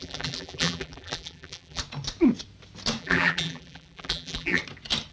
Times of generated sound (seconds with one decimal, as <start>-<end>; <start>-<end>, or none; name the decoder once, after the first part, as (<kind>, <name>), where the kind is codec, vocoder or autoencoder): 0.0-1.8 (vocoder, BigVGAN v2); 3.0-4.6